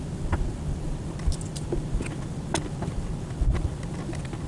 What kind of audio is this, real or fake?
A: real